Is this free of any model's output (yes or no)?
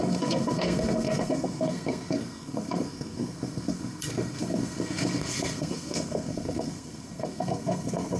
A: no